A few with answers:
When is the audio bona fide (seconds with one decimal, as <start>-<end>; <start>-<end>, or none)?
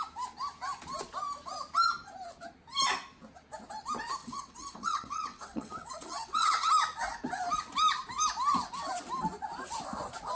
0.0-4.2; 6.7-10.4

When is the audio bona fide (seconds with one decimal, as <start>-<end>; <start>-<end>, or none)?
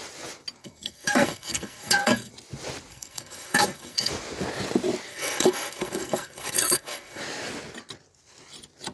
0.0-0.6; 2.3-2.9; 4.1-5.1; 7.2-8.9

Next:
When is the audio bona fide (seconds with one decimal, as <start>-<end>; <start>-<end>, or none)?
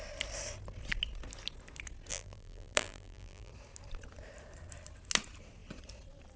0.0-2.1; 3.5-6.4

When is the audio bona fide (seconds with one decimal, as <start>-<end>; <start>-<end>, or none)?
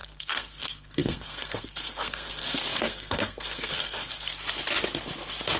4.3-5.6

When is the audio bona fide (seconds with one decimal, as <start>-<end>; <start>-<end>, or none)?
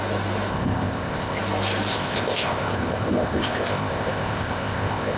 0.0-0.5; 1.4-1.9